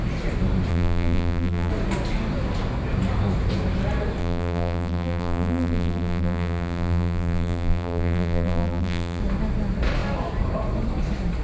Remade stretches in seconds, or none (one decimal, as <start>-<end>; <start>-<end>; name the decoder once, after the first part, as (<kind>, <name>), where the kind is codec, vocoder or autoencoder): 0.7-1.7 (vocoder, BigVGAN v2); 4.2-9.2